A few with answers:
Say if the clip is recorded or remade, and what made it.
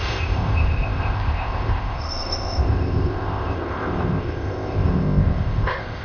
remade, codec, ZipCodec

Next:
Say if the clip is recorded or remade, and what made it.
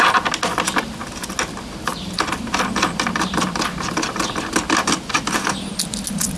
recorded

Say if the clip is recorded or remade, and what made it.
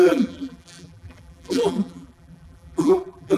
remade, vocoder, BigVGAN v2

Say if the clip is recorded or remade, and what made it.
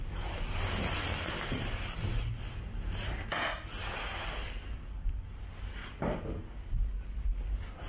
recorded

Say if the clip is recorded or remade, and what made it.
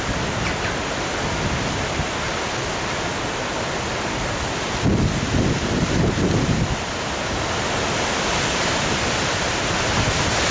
recorded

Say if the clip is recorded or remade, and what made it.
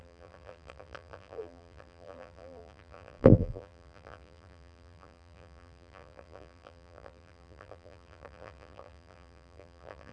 remade, vocoder, BigVGAN v2